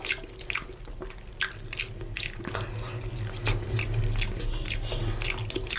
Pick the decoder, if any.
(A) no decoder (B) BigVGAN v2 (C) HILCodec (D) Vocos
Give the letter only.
A